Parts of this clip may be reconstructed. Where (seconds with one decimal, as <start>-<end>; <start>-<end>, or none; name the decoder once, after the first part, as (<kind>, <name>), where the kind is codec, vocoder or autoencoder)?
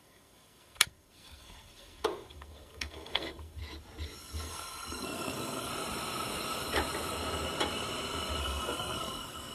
0.0-3.6 (codec, SNAC); 4.2-5.7; 8.4-9.5